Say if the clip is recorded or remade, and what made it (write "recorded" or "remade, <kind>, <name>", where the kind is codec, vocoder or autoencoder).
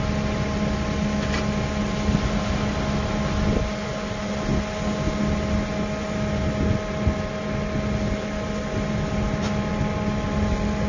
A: recorded